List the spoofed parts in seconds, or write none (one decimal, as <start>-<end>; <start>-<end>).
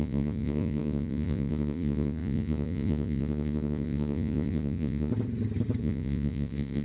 0.0-5.1; 5.8-6.8